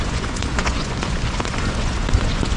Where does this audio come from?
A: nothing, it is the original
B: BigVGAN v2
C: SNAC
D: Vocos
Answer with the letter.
D